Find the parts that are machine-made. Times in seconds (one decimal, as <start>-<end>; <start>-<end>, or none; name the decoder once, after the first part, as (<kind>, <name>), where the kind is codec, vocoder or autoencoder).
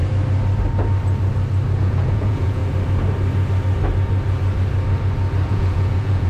1.8-2.6 (vocoder, Vocos); 5.5-6.3